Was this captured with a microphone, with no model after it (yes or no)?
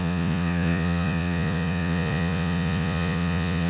no